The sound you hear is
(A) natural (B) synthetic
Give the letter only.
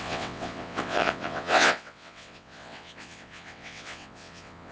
B